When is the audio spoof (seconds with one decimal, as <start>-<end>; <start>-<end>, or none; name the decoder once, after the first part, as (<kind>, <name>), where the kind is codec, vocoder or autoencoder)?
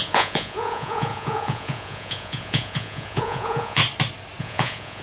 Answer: 0.0-3.8 (vocoder, Vocos); 4.4-5.0